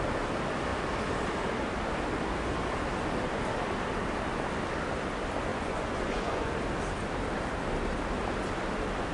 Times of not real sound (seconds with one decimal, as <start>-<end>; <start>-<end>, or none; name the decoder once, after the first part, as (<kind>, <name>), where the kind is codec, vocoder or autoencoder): 5.5-6.5 (vocoder, Vocos)